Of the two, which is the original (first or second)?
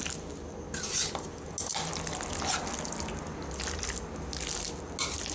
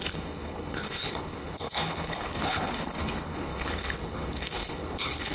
first